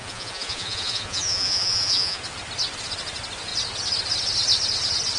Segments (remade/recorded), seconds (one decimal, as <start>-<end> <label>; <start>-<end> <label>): 0.0-2.2 remade; 2.2-5.2 recorded